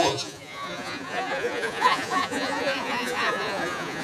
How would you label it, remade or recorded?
remade